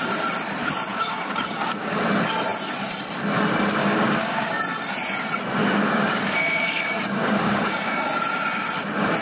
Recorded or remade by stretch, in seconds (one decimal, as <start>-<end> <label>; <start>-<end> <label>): 0.0-0.9 recorded; 0.9-2.0 remade; 2.0-3.8 recorded; 3.8-4.6 remade; 4.6-5.6 recorded; 5.6-8.0 remade; 8.0-9.2 recorded